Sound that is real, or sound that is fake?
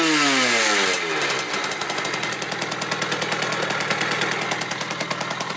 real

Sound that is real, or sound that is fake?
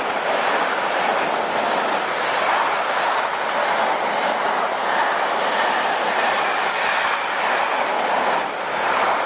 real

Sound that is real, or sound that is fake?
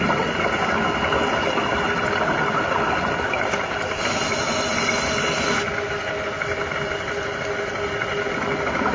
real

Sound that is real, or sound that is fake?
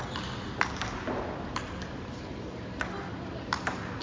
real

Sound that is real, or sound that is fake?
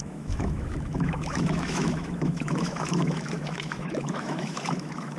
fake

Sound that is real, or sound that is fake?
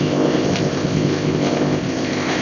fake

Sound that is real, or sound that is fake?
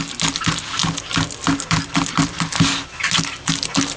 real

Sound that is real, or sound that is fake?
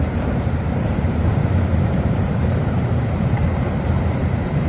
fake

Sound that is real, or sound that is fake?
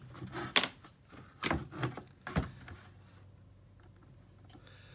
real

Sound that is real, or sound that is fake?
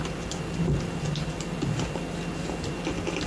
real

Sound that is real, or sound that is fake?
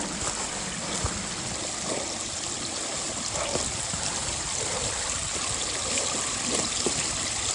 real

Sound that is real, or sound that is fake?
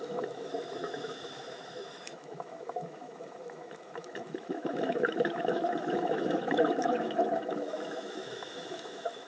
fake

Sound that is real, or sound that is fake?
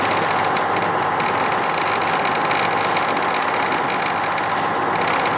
real